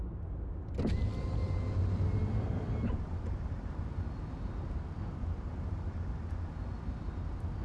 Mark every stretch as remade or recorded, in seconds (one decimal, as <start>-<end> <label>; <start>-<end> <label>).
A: 0.0-7.6 recorded